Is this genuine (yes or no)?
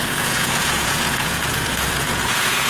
no